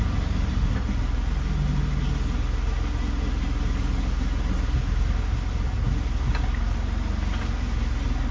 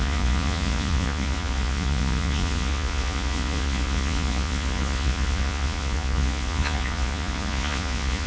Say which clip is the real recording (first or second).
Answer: first